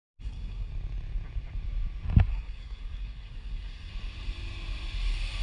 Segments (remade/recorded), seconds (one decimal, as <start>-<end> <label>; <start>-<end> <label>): 0.0-0.7 remade; 0.7-2.3 recorded; 2.3-3.9 remade; 3.9-5.4 recorded